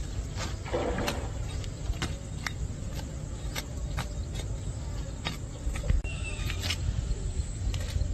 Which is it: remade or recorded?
recorded